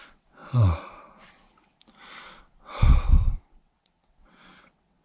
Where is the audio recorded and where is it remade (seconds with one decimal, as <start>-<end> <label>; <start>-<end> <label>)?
0.0-0.4 remade; 0.4-2.2 recorded; 2.2-5.0 remade